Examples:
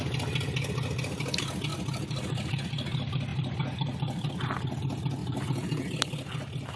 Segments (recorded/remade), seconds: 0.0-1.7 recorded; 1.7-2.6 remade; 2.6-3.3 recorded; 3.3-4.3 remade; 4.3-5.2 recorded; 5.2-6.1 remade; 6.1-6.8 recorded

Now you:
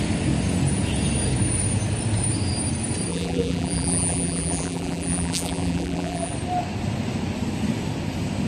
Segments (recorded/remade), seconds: 0.0-3.1 recorded; 3.1-6.3 remade; 6.3-8.5 recorded

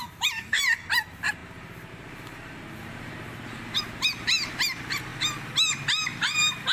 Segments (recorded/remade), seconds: 0.0-5.1 remade; 5.1-5.7 recorded; 5.7-6.7 remade

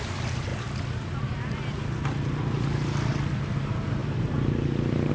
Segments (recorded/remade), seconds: 0.0-4.0 recorded; 4.0-5.1 remade

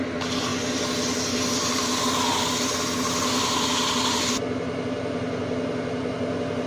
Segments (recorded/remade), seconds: 0.0-6.7 recorded

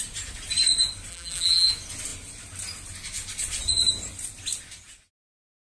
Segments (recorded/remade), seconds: 0.0-1.1 recorded; 1.1-1.7 remade; 1.7-5.7 recorded